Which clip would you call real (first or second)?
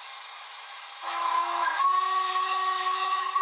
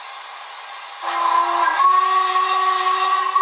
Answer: second